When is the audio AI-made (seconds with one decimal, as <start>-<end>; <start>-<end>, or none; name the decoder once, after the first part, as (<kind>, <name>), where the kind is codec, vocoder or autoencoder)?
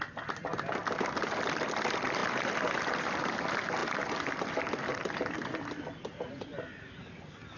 none